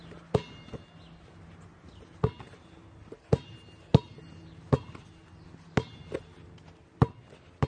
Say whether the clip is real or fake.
real